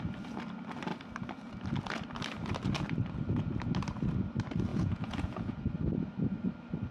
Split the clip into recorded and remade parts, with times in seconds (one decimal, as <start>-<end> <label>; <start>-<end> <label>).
0.0-4.7 recorded; 4.7-5.6 remade; 5.6-6.9 recorded